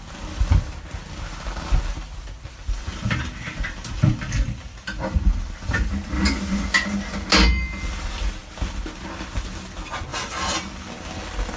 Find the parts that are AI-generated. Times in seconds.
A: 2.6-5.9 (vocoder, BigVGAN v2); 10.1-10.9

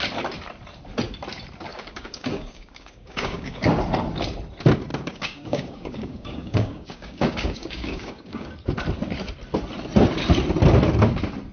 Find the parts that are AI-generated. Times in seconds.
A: 1.7-3.7 (codec, DAC); 4.9-8.5

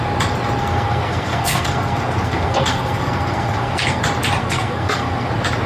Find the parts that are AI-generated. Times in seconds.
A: 0.6-4.0 (codec, SNAC); 4.4-5.3